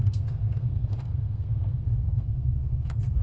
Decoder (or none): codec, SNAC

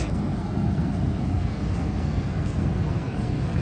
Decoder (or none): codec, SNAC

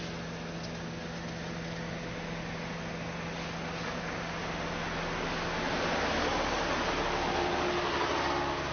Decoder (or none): none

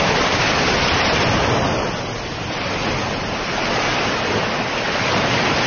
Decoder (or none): none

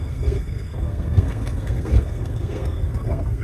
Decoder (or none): codec, SNAC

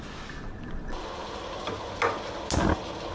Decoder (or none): none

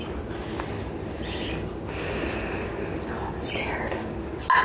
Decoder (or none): none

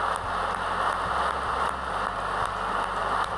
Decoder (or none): none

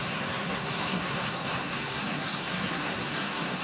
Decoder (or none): codec, SNAC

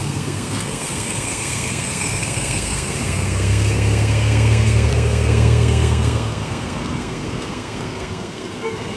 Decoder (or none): codec, SNAC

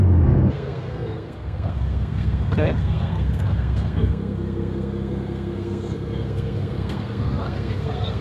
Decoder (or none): codec, SNAC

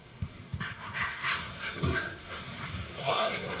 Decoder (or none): codec, SNAC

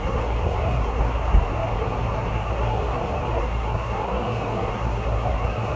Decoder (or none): codec, SNAC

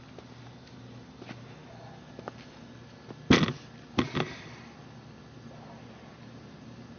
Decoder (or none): none